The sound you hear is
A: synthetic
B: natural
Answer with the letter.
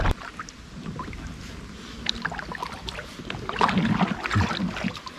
B